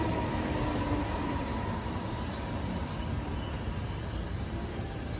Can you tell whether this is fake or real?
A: real